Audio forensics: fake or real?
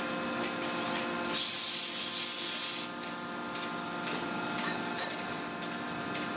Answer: real